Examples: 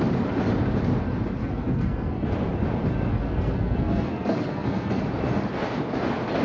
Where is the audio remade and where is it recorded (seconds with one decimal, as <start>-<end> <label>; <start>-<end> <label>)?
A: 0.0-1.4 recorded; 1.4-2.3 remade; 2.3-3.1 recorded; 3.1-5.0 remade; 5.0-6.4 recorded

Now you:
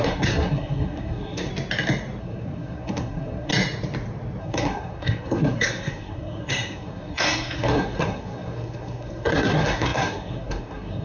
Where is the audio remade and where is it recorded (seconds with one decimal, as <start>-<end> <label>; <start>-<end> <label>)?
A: 0.0-1.5 remade; 1.5-2.2 recorded; 2.2-3.5 remade; 3.5-4.4 recorded; 4.4-11.0 remade

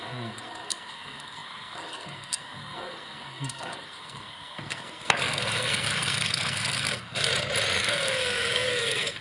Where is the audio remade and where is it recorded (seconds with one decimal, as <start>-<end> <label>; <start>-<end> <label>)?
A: 0.0-7.3 remade; 7.3-7.8 recorded; 7.8-9.2 remade

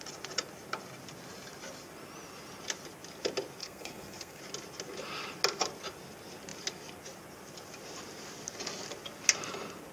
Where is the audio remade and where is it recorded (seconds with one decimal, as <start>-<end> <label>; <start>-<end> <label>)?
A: 0.0-3.6 recorded; 3.6-4.4 remade; 4.4-9.9 recorded

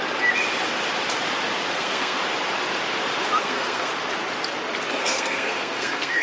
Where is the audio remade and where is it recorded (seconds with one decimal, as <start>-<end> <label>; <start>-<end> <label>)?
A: 0.0-1.7 recorded; 1.7-2.2 remade; 2.2-3.4 recorded; 3.4-3.9 remade; 3.9-5.0 recorded; 5.0-6.2 remade